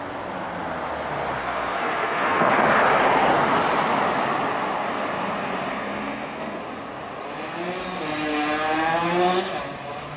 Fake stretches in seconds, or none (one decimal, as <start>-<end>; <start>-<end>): 1.4-2.5; 5.7-6.6